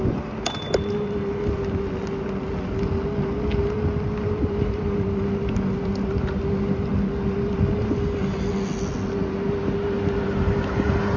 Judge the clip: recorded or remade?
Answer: recorded